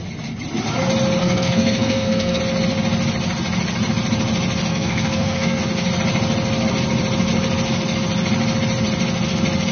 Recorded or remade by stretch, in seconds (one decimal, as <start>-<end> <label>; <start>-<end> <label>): 0.0-1.2 recorded; 1.2-2.4 remade; 2.4-4.7 recorded; 4.7-5.6 remade; 5.6-9.7 recorded